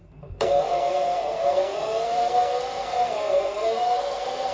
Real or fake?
fake